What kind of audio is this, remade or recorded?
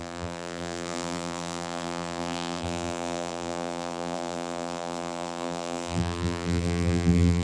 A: remade